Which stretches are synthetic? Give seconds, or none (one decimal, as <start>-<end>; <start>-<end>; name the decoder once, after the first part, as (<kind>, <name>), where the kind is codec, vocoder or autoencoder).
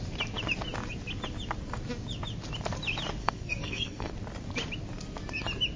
3.2-4.1 (codec, SNAC)